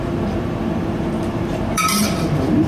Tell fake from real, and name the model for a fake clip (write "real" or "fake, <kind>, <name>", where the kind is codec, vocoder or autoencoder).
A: fake, vocoder, BigVGAN v2